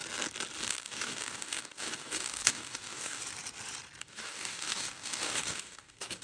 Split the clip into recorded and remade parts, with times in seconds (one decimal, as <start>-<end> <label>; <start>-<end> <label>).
0.0-0.6 recorded; 0.6-3.2 remade; 3.2-4.0 recorded; 4.0-6.2 remade